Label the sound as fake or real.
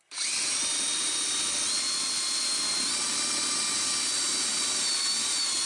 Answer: real